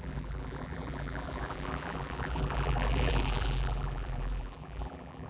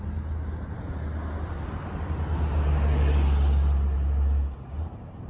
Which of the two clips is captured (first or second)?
second